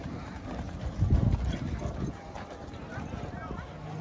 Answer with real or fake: real